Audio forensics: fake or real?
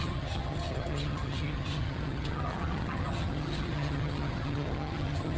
fake